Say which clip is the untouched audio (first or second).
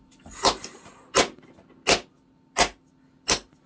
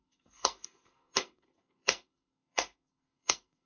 first